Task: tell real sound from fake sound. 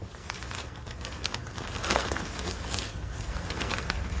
fake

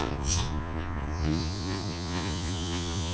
fake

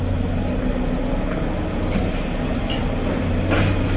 real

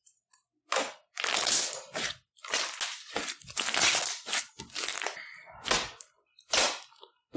real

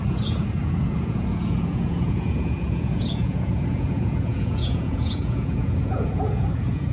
fake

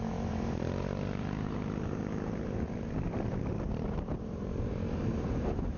fake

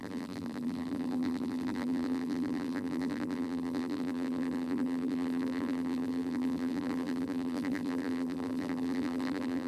fake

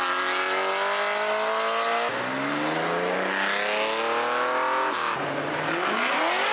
real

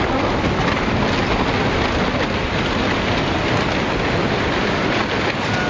real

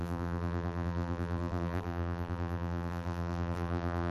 fake